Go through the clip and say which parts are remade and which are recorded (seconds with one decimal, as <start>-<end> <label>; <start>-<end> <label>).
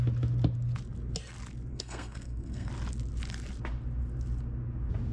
0.0-1.7 recorded; 1.7-2.7 remade; 2.7-5.1 recorded